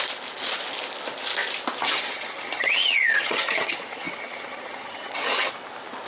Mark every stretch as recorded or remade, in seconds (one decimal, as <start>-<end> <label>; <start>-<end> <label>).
0.0-1.8 recorded; 1.8-5.5 remade; 5.5-6.1 recorded